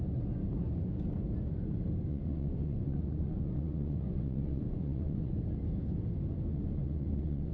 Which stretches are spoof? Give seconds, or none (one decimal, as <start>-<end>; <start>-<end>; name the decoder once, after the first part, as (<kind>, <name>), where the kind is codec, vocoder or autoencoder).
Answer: 2.1-5.4 (vocoder, Vocos); 6.5-7.5

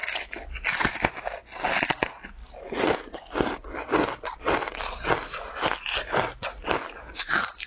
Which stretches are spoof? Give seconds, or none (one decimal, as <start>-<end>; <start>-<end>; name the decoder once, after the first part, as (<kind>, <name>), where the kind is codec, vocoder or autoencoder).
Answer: none

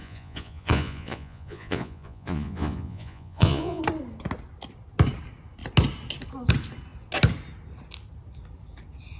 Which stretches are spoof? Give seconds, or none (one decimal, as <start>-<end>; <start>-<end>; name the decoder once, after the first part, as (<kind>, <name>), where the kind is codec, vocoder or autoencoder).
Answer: 0.0-3.8 (vocoder, Vocos)

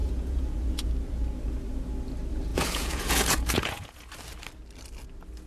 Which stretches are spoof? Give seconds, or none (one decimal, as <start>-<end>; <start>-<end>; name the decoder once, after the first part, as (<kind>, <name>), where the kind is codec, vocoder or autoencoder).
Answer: 0.0-0.9 (vocoder, Vocos); 2.5-4.1

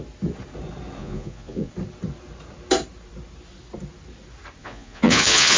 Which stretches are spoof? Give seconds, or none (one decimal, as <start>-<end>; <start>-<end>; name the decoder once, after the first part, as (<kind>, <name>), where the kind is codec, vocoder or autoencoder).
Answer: 1.0-1.7 (vocoder, Vocos); 4.6-5.6

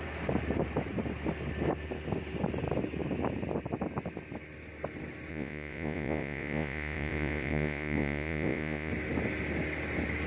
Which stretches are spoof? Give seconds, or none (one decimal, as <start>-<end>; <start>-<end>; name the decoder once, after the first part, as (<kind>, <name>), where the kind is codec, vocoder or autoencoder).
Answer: 5.3-8.9 (vocoder, Vocos)

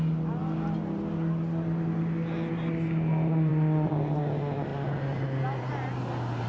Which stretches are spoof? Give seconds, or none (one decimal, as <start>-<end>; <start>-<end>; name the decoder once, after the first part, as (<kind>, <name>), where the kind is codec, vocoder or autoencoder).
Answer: none

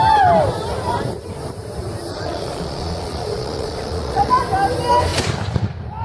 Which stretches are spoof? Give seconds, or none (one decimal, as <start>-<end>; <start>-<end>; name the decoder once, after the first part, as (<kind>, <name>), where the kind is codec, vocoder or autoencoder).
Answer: 2.1-4.4 (vocoder, Vocos)